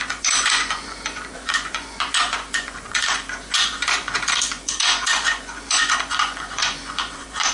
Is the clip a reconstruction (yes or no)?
yes